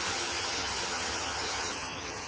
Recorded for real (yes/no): no